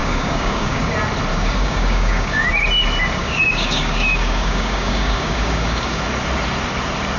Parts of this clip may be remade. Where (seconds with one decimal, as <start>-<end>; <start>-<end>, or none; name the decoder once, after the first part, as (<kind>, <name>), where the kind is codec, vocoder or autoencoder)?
0.0-0.9 (codec, DAC); 1.3-2.5; 3.2-6.0